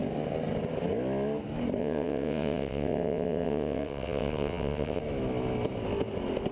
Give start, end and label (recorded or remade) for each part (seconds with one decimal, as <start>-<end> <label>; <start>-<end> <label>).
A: 0.0-1.8 recorded; 1.8-5.0 remade; 5.0-6.5 recorded